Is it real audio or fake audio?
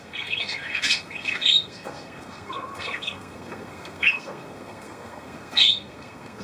fake